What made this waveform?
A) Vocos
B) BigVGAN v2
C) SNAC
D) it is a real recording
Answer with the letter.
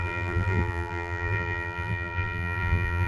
B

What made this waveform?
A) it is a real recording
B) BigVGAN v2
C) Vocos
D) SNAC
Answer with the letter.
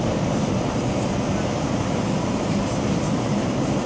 B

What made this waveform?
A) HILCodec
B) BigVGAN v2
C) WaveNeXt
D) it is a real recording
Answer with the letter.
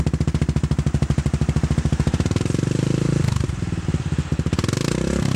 B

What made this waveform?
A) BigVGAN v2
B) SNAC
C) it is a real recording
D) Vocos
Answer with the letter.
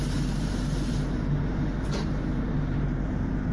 A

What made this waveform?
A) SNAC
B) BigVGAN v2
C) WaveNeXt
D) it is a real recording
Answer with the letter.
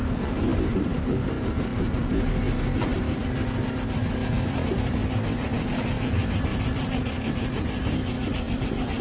D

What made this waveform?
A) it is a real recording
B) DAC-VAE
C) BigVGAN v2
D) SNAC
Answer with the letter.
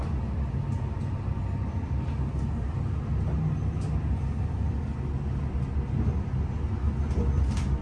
A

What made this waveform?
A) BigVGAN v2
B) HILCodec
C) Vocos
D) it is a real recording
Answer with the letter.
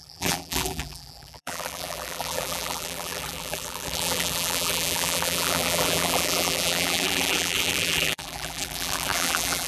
A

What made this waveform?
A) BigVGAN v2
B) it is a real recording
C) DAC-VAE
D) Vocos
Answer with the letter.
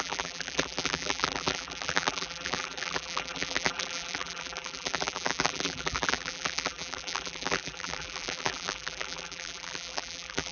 A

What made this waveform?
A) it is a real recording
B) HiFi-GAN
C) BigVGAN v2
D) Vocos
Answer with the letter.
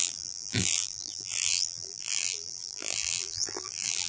C